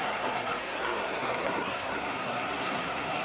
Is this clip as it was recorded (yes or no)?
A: no